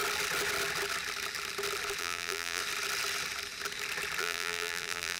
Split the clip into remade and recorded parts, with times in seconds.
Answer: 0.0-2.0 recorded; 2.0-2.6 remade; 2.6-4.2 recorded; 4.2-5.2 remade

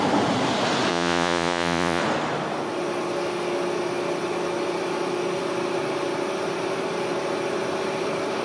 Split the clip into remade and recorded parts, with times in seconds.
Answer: 0.0-0.9 recorded; 0.9-2.0 remade; 2.0-8.4 recorded

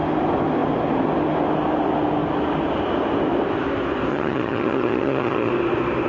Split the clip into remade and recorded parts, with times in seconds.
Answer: 0.0-4.1 recorded; 4.1-5.5 remade; 5.5-6.1 recorded

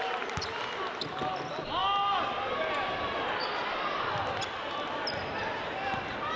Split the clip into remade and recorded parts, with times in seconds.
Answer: 0.0-6.4 recorded

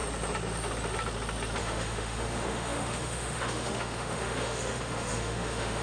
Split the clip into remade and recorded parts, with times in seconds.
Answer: 0.0-1.6 recorded; 1.6-5.8 remade

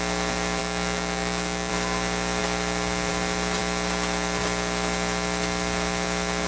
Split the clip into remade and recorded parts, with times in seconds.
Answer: 0.0-0.6 recorded; 0.6-1.7 remade; 1.7-6.5 recorded

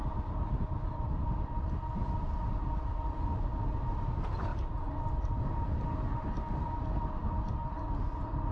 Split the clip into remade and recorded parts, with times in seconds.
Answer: 0.0-8.5 recorded